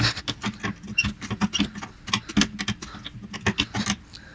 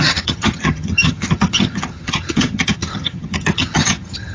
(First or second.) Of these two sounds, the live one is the first